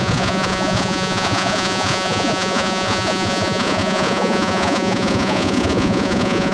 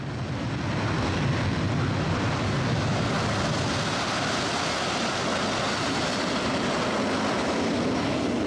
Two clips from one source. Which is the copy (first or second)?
first